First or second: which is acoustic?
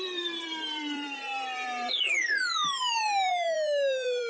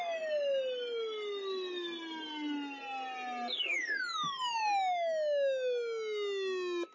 second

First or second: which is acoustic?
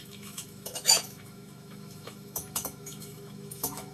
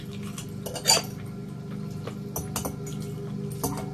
second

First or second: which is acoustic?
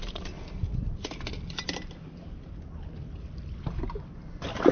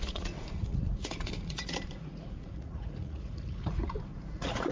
first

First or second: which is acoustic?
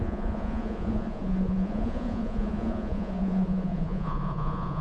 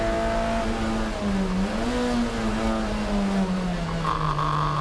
second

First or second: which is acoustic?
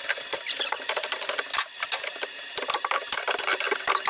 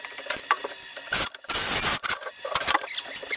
second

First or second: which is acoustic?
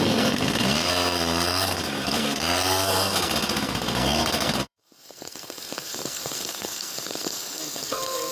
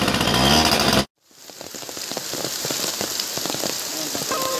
second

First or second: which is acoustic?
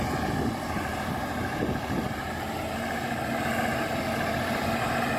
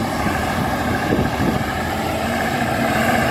first